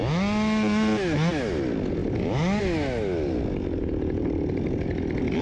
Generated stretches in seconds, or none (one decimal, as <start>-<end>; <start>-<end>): none